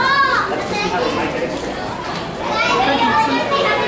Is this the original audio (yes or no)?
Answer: yes